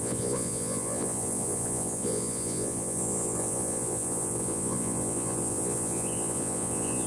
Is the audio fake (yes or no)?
yes